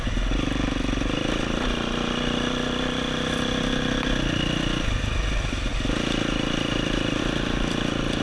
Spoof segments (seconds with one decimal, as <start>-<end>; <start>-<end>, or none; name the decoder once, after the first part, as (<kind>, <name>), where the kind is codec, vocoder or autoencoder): none